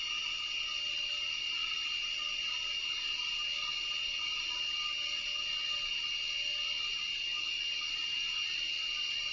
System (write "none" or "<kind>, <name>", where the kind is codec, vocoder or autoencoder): none